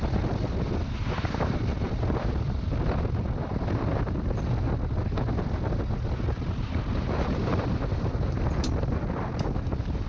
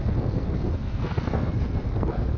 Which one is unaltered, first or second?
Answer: first